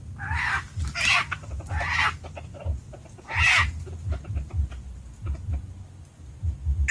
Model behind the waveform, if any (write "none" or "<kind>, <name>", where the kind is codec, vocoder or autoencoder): none